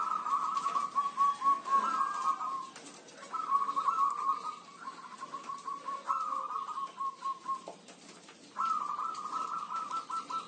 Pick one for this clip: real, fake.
real